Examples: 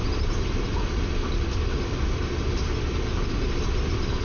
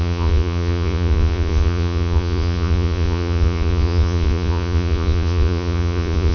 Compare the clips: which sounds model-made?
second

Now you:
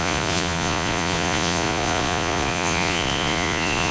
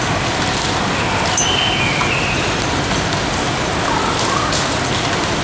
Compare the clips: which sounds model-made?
first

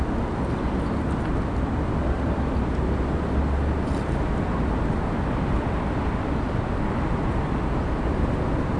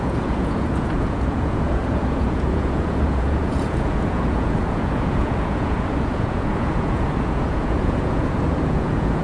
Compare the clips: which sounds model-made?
second